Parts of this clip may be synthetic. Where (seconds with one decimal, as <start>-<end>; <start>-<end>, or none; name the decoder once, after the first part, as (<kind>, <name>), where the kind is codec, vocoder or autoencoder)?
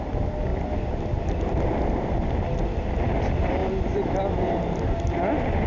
3.6-5.3 (vocoder, BigVGAN v2)